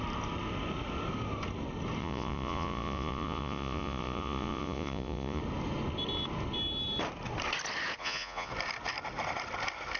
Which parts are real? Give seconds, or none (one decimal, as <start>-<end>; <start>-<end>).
0.0-2.0; 5.4-8.0; 8.5-10.0